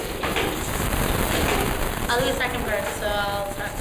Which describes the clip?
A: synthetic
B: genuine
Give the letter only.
B